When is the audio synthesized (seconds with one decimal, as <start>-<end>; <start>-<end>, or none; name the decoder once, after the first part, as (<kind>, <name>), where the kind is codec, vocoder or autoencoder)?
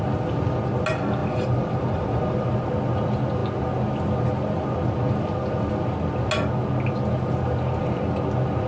1.2-2.5 (vocoder, BigVGAN v2)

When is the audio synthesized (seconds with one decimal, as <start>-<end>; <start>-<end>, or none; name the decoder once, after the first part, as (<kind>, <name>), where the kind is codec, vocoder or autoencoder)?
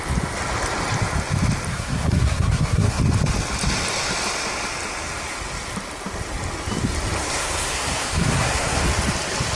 1.7-3.0 (codec, SNAC); 7.2-8.8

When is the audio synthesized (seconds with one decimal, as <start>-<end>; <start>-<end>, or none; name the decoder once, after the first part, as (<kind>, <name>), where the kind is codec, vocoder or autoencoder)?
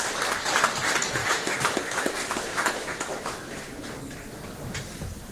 1.2-4.0 (autoencoder, DAC-VAE)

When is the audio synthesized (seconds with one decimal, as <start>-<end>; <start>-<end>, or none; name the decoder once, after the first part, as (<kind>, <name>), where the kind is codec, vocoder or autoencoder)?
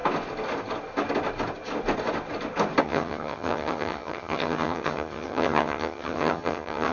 2.8-6.9 (vocoder, HiFi-GAN)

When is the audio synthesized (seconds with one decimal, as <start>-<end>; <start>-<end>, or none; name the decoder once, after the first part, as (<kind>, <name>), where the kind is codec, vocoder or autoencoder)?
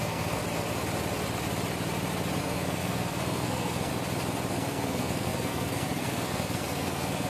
0.0-0.4 (codec, SNAC); 2.4-3.9; 4.5-7.3